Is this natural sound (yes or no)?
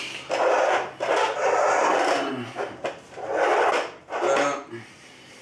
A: yes